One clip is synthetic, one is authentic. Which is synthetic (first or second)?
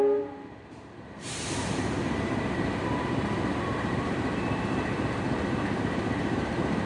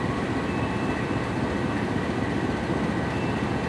first